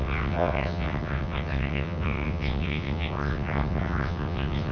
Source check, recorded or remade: remade